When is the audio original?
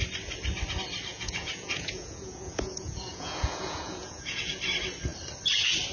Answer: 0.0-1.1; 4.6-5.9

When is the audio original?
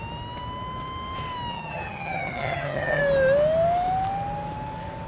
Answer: 0.0-1.5; 3.0-5.1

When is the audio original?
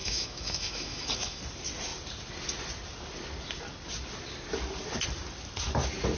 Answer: 1.4-6.2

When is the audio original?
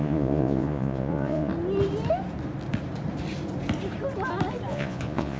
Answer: 1.5-4.7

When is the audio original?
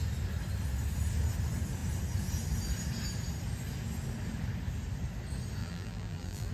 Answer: 0.0-5.6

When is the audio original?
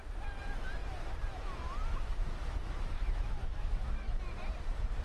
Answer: 0.0-2.3; 4.2-5.0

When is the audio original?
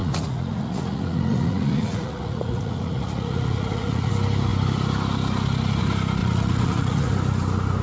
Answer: 4.1-6.2; 7.1-7.8